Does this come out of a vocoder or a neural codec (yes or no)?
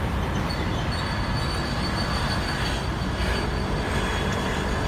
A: no